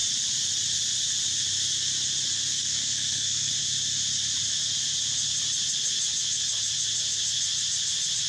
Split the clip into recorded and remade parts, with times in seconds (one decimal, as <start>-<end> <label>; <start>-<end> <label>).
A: 0.0-2.5 recorded; 2.5-3.5 remade; 3.5-8.3 recorded